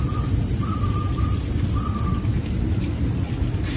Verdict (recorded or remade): recorded